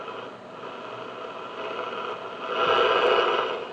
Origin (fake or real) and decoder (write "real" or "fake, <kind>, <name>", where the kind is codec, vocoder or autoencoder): real